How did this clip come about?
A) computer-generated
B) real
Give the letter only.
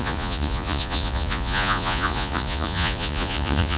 A